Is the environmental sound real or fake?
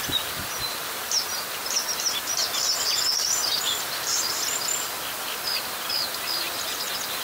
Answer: real